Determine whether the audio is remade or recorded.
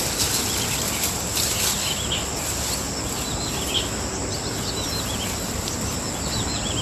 recorded